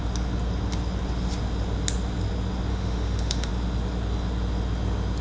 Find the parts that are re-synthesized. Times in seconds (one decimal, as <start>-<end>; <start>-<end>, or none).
2.7-3.5